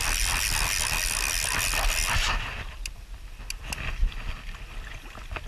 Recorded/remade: recorded